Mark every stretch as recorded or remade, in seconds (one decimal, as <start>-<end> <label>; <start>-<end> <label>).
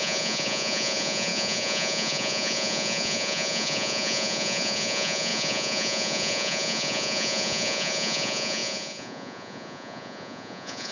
0.0-10.9 remade